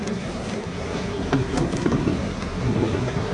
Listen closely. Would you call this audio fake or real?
fake